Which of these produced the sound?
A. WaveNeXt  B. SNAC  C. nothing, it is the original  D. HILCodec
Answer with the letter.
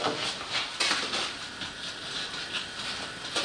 C